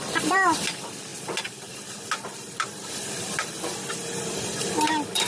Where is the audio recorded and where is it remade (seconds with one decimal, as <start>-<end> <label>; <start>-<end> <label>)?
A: 0.0-5.3 remade